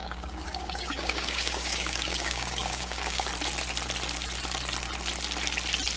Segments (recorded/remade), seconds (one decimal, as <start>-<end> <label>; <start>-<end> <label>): 0.0-3.3 remade; 3.3-6.0 recorded